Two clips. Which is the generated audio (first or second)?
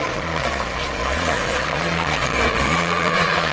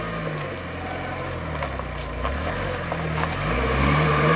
first